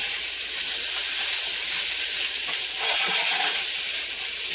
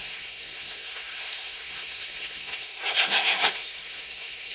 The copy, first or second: second